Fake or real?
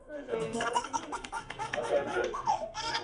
fake